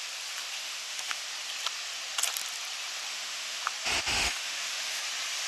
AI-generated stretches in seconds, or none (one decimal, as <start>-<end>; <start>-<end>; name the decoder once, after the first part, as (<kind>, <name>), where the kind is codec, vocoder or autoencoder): 0.6-1.2 (autoencoder, DAC-VAE); 3.1-3.6; 4.1-5.0